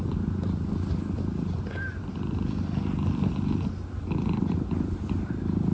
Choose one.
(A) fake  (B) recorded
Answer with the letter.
B